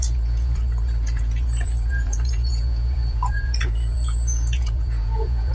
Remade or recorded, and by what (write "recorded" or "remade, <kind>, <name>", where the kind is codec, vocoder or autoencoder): remade, vocoder, Vocos